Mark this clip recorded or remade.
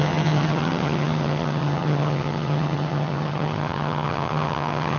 remade